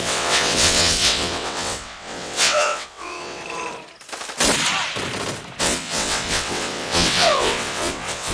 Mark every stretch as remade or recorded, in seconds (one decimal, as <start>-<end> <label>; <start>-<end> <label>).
0.0-3.4 remade; 3.4-5.6 recorded; 5.6-8.3 remade